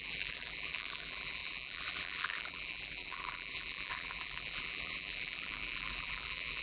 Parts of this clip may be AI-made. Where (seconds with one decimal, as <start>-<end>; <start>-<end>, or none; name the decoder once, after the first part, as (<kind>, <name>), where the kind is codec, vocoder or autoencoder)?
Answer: 0.0-6.6 (vocoder, BigVGAN v2)